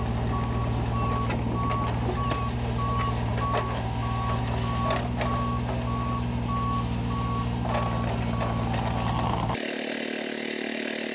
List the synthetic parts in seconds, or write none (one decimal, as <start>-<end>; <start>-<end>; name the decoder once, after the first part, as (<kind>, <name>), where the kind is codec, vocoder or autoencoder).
none